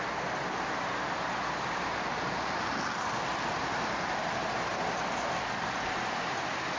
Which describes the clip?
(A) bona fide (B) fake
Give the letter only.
A